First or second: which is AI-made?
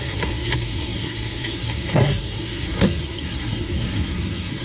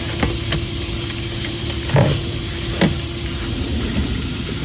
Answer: first